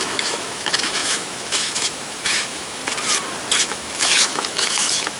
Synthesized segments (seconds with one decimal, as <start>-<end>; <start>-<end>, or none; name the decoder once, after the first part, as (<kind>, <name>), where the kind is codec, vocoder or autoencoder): 0.0-2.8 (autoencoder, DAC-VAE); 3.6-5.2